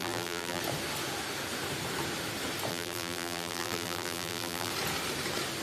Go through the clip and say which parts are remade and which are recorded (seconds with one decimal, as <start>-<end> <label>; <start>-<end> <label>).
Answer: 0.0-0.6 remade; 0.6-2.7 recorded; 2.7-4.7 remade; 4.7-5.6 recorded